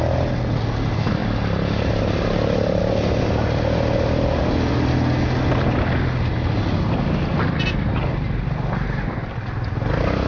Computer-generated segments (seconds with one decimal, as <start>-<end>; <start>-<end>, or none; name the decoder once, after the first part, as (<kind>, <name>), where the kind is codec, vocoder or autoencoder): 1.2-2.8 (vocoder, BigVGAN v2)